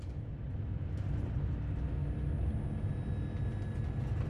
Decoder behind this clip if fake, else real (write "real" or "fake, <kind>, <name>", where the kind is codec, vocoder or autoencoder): real